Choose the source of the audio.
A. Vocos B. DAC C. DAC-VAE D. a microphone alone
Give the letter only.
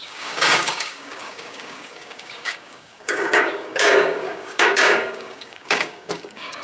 B